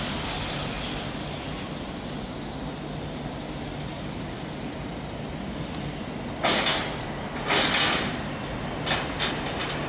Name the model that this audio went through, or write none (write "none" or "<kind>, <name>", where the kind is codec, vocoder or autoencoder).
none